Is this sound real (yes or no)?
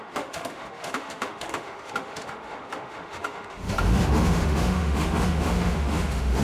no